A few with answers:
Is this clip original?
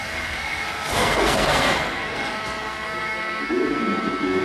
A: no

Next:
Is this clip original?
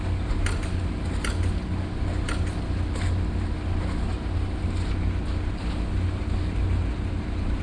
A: yes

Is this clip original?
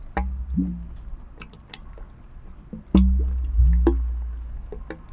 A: yes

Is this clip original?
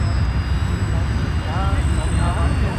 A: yes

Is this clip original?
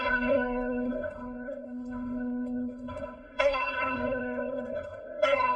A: no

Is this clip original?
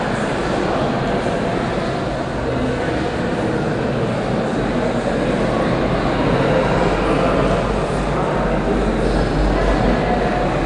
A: yes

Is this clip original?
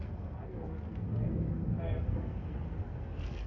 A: no